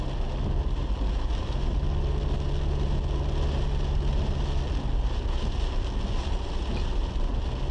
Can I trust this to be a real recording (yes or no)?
yes